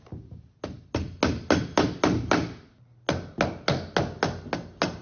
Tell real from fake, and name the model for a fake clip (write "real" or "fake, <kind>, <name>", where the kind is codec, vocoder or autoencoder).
real